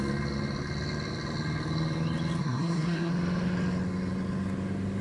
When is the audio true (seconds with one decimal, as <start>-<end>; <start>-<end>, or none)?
0.0-2.4; 3.1-5.0